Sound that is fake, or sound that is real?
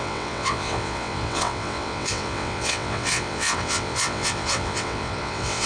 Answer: fake